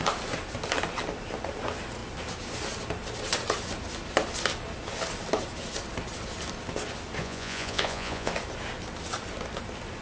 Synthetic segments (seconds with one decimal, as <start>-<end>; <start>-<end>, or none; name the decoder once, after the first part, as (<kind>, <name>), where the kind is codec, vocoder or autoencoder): 7.2-8.3 (vocoder, Vocos)